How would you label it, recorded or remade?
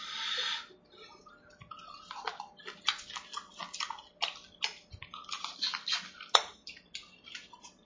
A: recorded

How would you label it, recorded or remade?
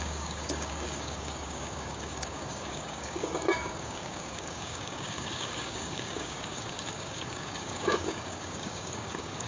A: remade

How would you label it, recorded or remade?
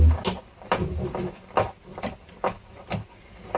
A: recorded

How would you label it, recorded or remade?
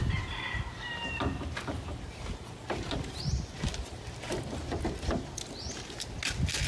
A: recorded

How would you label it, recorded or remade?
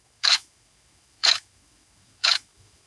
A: remade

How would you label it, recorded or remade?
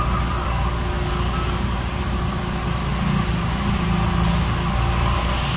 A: recorded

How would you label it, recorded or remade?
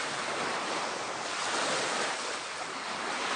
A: remade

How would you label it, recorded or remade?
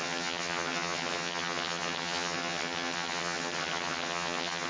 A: remade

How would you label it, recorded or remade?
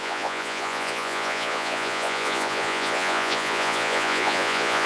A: remade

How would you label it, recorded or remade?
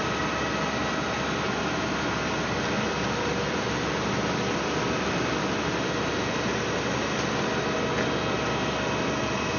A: recorded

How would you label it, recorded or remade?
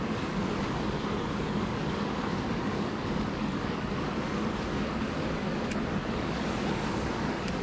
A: remade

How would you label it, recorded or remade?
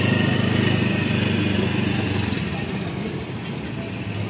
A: recorded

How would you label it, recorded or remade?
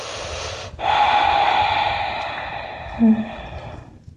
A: recorded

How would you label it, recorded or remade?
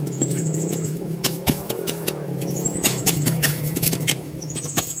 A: remade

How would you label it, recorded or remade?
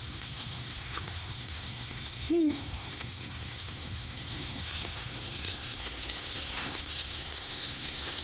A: remade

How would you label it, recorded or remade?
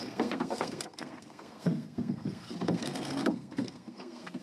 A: remade